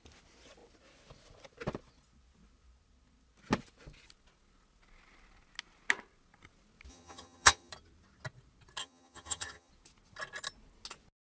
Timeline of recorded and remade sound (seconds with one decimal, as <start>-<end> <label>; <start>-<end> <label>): 0.0-6.9 recorded; 6.9-7.7 remade; 7.7-8.8 recorded; 8.8-9.7 remade; 9.7-11.3 recorded